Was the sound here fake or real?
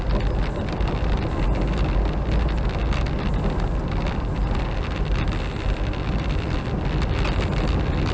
real